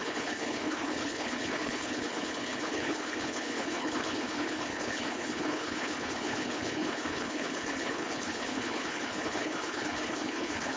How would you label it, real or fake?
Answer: fake